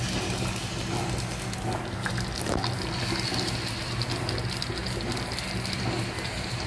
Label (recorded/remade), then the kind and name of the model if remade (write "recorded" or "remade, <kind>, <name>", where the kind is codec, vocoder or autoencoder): recorded